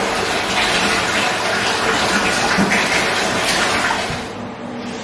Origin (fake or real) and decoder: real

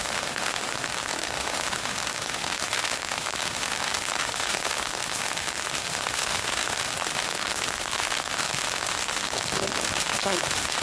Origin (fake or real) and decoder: fake, autoencoder, DAC-VAE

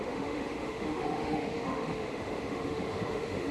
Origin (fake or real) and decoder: fake, autoencoder, DAC-VAE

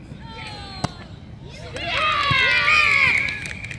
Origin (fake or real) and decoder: real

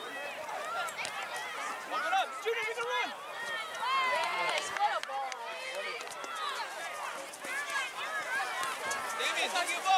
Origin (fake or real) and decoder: real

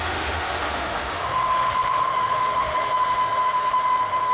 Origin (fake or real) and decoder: fake, autoencoder, DAC-VAE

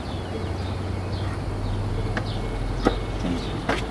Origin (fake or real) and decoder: real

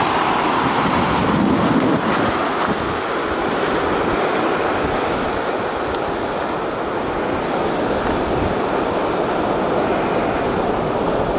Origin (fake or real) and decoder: real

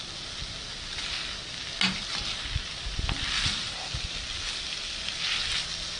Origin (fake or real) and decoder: real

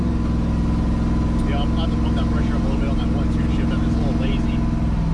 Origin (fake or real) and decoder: real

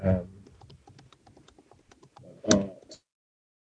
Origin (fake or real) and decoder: real